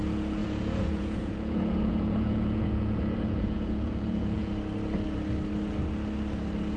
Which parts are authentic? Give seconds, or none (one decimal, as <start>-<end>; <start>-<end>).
0.0-0.4; 4.5-6.8